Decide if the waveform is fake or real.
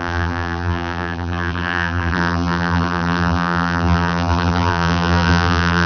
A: fake